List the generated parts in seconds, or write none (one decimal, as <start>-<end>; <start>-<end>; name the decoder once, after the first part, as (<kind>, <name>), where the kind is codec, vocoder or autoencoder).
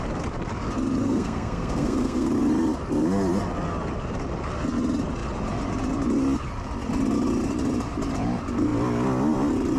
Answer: 1.0-2.3 (codec, SNAC)